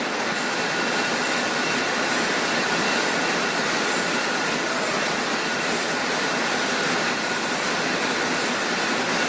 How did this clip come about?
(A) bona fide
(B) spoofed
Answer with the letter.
A